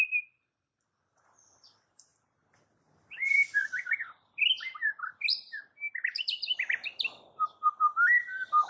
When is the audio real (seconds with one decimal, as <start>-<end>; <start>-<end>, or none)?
0.0-8.7